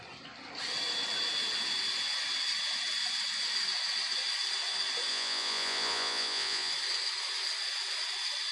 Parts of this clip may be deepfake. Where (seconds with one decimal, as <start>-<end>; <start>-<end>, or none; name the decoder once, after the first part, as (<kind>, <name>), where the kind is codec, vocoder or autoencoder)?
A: 5.1-6.7 (vocoder, Vocos)